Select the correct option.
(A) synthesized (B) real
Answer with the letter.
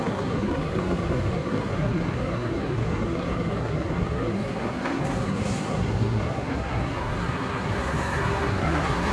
A